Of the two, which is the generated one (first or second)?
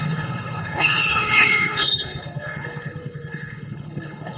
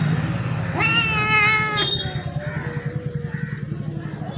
first